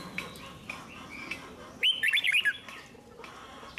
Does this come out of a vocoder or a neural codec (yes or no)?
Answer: no